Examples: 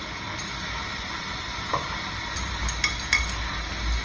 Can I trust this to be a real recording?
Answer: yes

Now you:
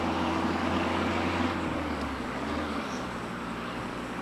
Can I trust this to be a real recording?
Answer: no